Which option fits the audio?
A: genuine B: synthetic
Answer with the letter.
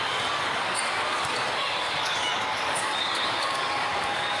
B